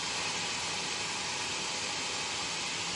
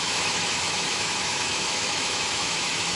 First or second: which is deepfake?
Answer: second